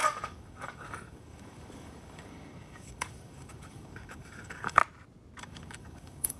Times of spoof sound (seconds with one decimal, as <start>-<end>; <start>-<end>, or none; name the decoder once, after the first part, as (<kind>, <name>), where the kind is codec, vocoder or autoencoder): 0.0-4.8 (codec, DAC); 5.4-6.4